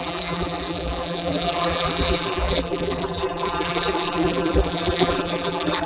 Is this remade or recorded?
remade